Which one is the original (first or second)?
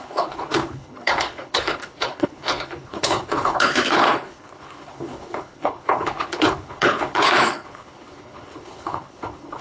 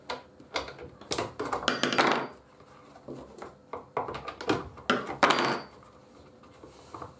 second